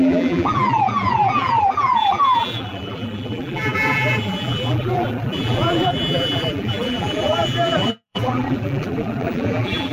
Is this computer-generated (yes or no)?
yes